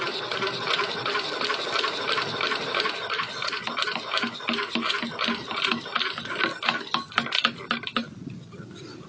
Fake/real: real